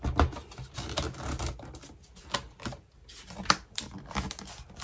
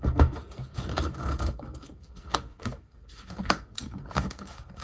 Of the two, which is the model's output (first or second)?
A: second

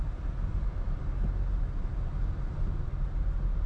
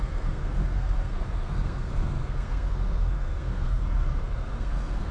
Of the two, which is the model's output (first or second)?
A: second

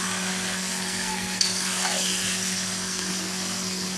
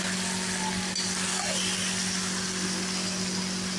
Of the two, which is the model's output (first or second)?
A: first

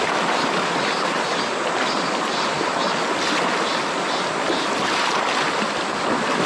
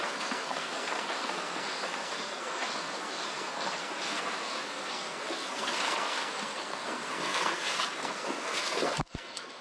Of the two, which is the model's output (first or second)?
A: second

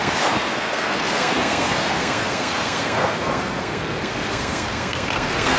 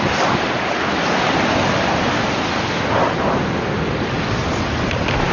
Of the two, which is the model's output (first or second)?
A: first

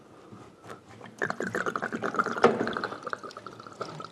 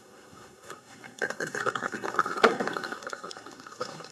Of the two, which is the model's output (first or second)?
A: second